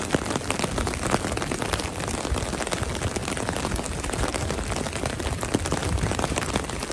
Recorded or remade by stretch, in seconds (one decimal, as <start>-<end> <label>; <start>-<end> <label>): 0.0-3.2 recorded; 3.2-4.7 remade; 4.7-5.8 recorded; 5.8-6.4 remade; 6.4-6.9 recorded